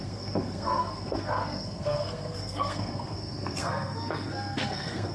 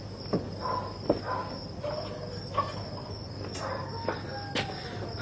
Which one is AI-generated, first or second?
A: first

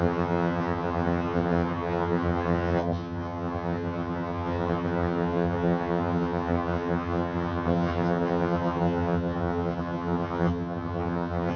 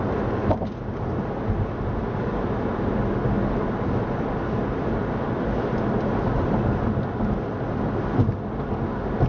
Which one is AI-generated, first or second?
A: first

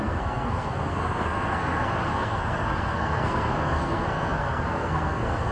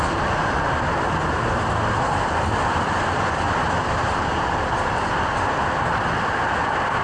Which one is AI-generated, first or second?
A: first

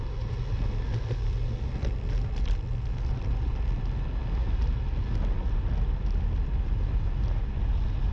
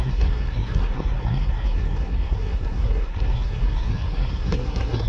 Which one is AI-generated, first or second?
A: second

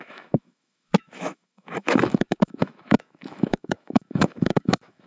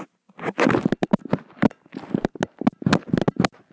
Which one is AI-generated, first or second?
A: first